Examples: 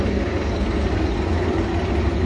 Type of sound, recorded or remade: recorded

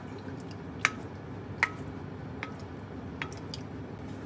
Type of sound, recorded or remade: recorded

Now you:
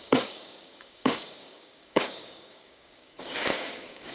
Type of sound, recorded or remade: remade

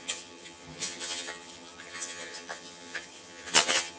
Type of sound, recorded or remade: remade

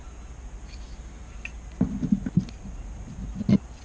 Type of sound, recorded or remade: recorded